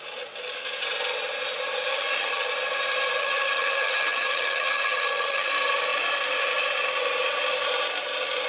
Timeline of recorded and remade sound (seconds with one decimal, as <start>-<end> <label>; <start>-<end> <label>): 0.0-1.9 recorded; 1.9-2.5 remade; 2.5-3.2 recorded; 3.2-5.5 remade; 5.5-8.5 recorded